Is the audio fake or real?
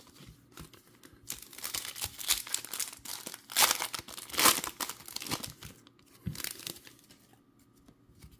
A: real